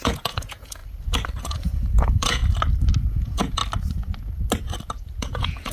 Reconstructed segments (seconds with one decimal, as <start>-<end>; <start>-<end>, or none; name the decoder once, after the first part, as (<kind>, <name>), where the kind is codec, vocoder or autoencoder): 0.0-0.8 (vocoder, Vocos); 1.4-2.4; 3.1-3.6; 5.2-5.7